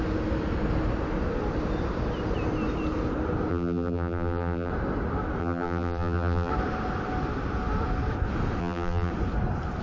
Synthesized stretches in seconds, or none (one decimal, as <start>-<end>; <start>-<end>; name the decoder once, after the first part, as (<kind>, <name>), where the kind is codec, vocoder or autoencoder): 3.5-4.7 (vocoder, BigVGAN v2); 5.4-6.5; 8.6-9.1